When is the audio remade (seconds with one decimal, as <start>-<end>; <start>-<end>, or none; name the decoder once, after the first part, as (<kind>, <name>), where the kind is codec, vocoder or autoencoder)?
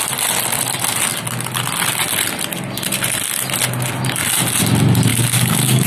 5.1-5.9 (codec, DAC)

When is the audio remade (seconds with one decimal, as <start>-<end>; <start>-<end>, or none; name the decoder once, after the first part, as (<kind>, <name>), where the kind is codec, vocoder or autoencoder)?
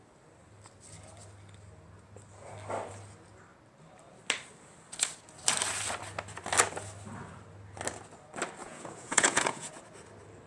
8.6-9.7 (vocoder, Vocos)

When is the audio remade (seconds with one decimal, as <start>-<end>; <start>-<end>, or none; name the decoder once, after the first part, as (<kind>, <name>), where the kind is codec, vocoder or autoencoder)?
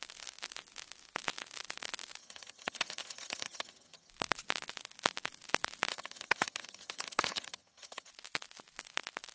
2.2-4.1 (vocoder, HiFi-GAN); 5.9-8.1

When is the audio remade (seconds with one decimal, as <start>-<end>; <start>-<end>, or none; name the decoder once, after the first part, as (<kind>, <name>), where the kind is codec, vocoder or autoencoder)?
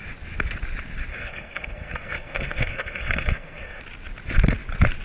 1.1-3.8 (codec, SNAC)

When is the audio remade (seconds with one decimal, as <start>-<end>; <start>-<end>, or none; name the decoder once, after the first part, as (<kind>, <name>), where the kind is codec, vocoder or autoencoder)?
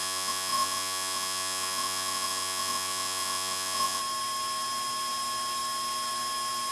0.0-4.0 (vocoder, Vocos)